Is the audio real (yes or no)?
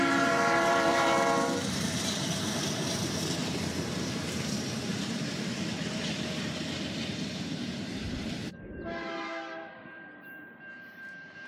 no